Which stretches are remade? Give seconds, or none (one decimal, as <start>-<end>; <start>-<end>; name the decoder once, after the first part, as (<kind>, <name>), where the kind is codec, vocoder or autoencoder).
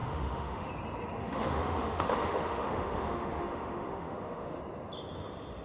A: 0.0-0.7 (autoencoder, DAC-VAE); 1.2-4.6